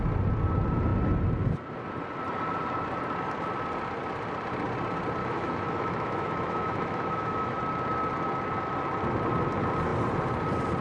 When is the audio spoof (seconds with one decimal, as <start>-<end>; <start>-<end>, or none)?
5.2-7.6